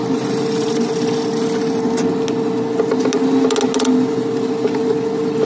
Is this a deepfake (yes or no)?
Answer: no